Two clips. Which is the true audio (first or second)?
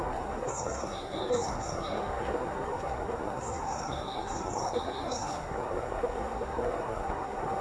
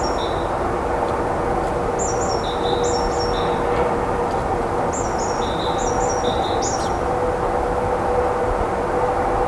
second